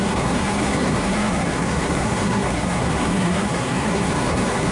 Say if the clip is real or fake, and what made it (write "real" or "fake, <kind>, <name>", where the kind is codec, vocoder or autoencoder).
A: fake, codec, SNAC